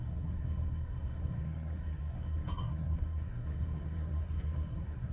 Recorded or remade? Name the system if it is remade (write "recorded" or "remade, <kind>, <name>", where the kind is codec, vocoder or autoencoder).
remade, codec, SNAC